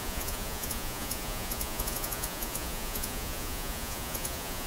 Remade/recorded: remade